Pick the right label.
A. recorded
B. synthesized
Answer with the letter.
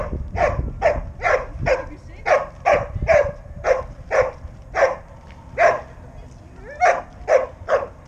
A